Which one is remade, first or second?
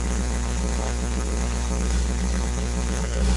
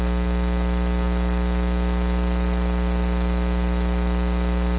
first